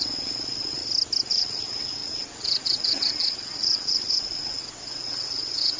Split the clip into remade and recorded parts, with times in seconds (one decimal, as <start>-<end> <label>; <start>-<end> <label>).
0.0-0.8 remade; 0.8-1.3 recorded; 1.3-5.8 remade